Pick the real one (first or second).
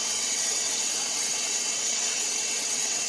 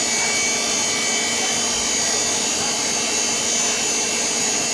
second